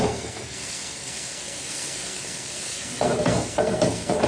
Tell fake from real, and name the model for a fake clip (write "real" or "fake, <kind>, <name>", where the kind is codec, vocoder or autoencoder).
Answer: fake, codec, SNAC